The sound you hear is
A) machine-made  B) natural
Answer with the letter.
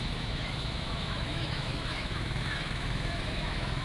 A